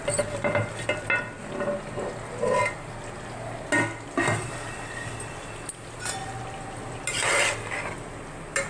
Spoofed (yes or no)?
no